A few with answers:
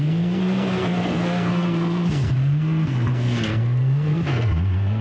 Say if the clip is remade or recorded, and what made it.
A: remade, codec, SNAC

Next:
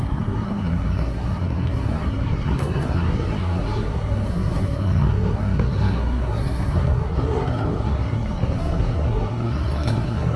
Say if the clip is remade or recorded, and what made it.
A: remade, codec, SNAC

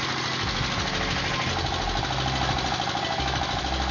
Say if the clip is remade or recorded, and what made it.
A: recorded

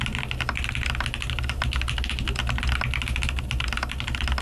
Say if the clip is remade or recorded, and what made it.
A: recorded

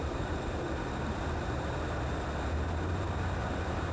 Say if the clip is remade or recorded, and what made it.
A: remade, vocoder, BigVGAN v2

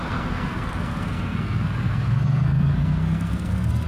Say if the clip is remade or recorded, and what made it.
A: remade, codec, SNAC